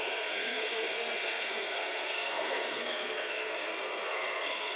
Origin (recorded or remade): remade